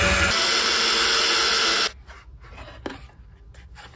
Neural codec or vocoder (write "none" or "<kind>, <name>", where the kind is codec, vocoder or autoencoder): none